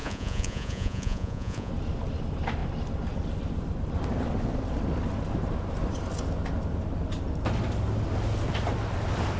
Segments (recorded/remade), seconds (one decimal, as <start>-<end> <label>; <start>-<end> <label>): 0.0-1.7 remade; 1.7-9.4 recorded